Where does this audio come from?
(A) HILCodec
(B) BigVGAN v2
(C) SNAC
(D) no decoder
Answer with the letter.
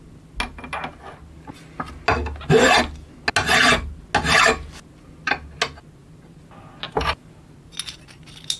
D